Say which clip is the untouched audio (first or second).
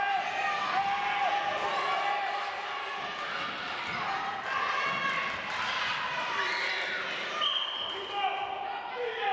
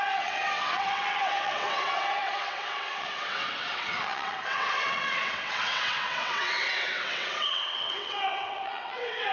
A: first